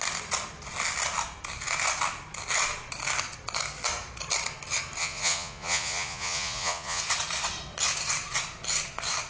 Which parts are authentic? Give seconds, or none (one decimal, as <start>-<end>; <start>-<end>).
0.0-5.0; 7.0-9.3